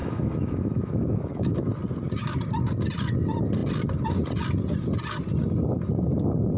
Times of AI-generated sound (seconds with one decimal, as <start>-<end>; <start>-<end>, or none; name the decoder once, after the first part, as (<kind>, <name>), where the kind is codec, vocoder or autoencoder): 0.0-1.7 (autoencoder, DAC-VAE)